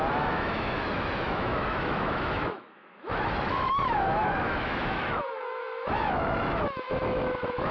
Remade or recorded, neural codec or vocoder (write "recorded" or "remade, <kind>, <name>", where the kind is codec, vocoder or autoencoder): remade, autoencoder, DAC-VAE